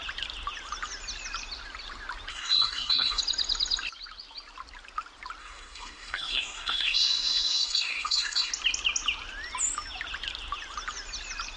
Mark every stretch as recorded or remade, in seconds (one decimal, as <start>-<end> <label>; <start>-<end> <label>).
0.0-2.3 recorded; 2.3-3.2 remade; 3.2-5.4 recorded; 5.4-8.5 remade; 8.5-11.6 recorded